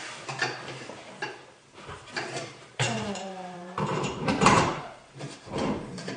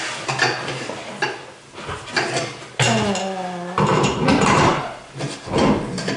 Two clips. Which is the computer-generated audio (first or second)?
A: first